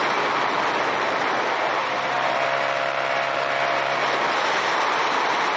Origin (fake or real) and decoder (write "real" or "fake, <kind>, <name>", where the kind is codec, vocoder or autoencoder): real